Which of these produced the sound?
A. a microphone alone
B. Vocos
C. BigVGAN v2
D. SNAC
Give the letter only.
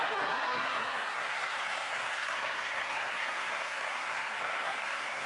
D